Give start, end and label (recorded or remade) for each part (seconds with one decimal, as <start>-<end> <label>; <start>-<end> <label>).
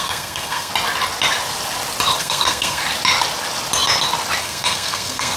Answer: 0.0-0.7 remade; 0.7-2.2 recorded; 2.2-2.8 remade; 2.8-4.4 recorded; 4.4-5.4 remade